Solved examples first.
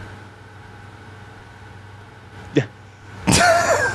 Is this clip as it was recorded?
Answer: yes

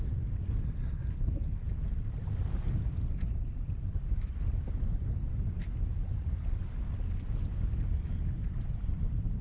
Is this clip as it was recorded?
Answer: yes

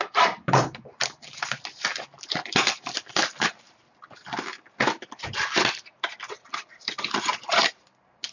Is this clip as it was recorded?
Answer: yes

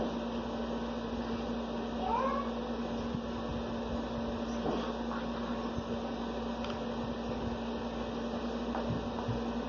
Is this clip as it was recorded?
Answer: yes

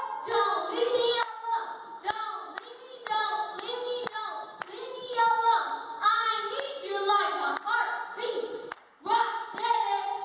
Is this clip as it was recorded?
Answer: yes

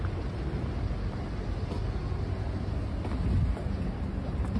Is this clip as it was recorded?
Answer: yes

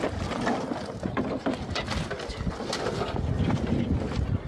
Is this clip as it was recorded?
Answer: yes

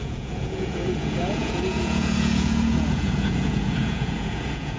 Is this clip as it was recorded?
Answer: no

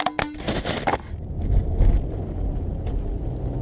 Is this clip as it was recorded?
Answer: yes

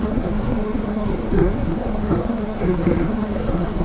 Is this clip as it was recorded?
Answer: no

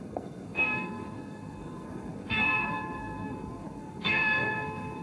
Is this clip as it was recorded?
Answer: no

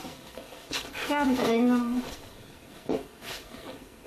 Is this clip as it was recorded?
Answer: no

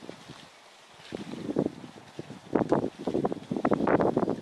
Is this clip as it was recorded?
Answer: yes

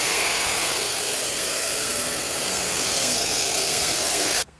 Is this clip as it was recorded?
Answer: no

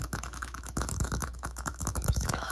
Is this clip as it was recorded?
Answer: no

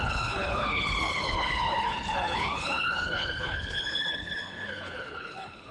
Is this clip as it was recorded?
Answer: no